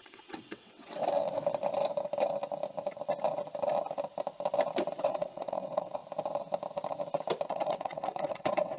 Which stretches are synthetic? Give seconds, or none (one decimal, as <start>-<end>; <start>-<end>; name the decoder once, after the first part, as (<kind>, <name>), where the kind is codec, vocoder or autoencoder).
0.0-1.0 (vocoder, WaveNeXt); 5.0-6.0; 7.5-8.8